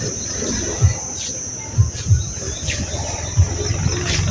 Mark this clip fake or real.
real